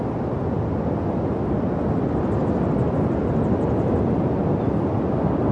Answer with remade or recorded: recorded